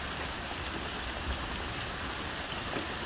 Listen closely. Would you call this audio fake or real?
real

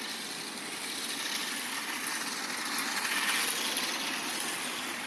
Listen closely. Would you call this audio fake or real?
real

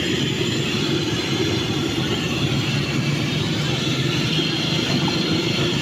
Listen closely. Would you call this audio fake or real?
real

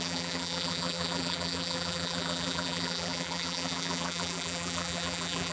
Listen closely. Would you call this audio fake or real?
fake